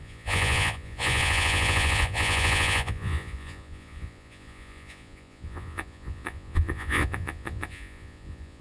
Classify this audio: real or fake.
fake